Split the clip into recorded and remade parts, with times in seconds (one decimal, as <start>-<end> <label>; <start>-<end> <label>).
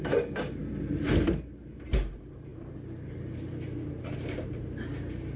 0.0-5.4 recorded